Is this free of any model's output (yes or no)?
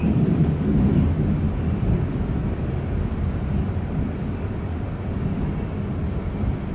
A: yes